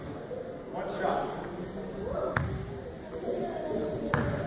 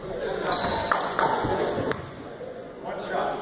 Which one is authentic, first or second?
first